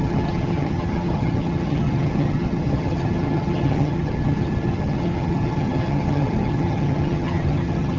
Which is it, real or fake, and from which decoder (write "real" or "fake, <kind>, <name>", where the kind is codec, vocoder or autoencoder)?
fake, vocoder, HiFi-GAN